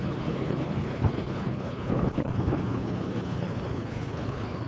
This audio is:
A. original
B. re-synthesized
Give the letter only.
B